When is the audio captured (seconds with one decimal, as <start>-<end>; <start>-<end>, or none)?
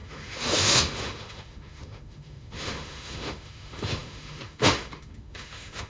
none